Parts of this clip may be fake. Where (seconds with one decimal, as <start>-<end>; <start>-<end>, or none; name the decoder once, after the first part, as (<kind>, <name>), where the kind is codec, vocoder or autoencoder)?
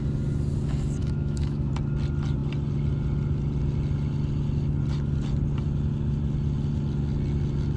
1.0-1.7 (autoencoder, DAC-VAE)